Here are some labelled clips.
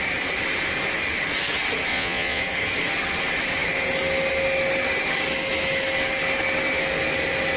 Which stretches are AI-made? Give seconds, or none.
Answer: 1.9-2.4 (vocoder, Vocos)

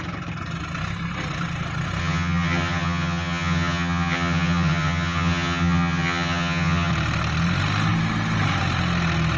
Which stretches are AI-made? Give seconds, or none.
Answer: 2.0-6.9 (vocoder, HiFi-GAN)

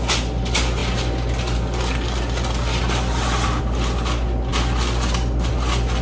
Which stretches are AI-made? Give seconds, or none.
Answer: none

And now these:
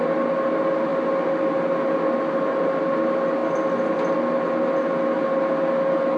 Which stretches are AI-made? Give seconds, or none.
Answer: none

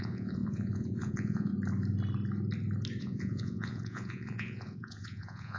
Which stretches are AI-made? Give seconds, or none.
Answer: 0.0-1.5 (vocoder, Vocos); 3.0-5.6

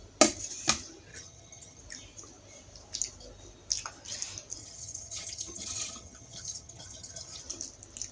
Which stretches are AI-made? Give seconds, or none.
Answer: 1.1-1.8 (vocoder, HiFi-GAN); 4.6-7.4